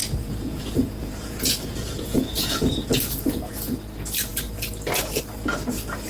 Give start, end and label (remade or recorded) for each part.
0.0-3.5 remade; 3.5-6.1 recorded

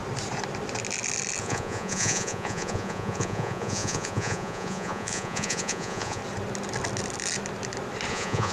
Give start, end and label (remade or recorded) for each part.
0.0-1.4 recorded; 1.4-6.2 remade; 6.2-8.1 recorded; 8.1-8.5 remade

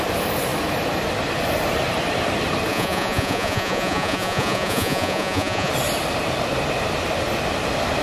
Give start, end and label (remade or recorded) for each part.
0.0-2.7 recorded; 2.7-5.7 remade; 5.7-8.0 recorded

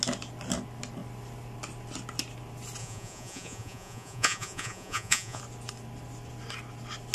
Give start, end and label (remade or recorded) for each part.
0.0-2.8 recorded; 2.8-5.4 remade; 5.4-7.1 recorded